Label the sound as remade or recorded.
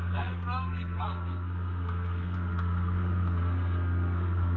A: remade